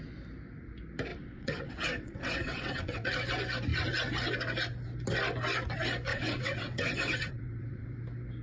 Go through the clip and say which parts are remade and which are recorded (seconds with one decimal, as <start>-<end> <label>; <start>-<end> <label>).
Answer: 0.0-1.1 recorded; 1.1-3.1 remade; 3.1-6.1 recorded; 6.1-8.0 remade; 8.0-8.4 recorded